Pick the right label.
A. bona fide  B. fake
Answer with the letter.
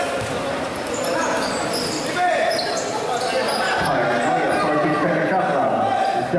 A